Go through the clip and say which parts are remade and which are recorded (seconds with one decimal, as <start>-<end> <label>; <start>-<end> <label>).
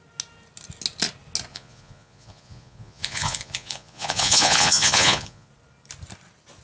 0.0-1.5 recorded; 1.5-5.5 remade; 5.5-6.6 recorded